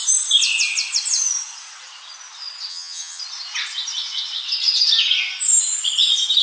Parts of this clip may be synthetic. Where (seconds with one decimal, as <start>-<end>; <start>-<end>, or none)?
2.7-3.2